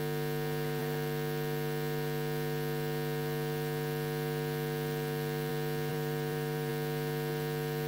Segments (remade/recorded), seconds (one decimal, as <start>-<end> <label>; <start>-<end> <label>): 0.0-5.9 recorded; 5.9-6.7 remade; 6.7-7.9 recorded